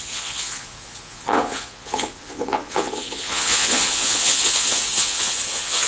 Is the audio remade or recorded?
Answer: remade